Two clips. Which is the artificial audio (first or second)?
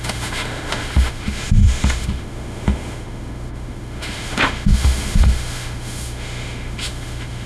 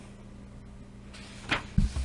first